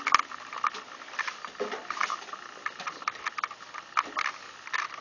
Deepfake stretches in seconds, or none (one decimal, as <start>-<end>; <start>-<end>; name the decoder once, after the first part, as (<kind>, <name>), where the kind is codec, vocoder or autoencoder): none